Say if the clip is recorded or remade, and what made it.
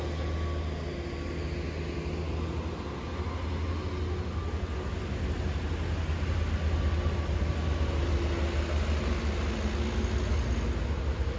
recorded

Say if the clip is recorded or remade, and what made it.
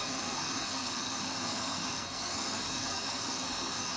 remade, codec, SNAC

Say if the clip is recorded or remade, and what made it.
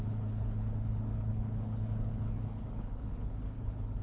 remade, codec, HILCodec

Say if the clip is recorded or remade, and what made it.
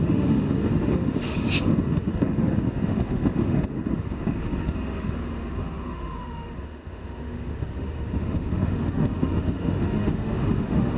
remade, autoencoder, DAC-VAE